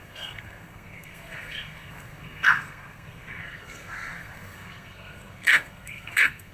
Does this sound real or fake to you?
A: fake